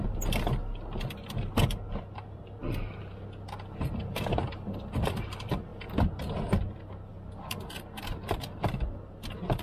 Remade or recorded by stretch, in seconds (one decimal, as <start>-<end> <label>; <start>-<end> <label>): 0.0-9.6 recorded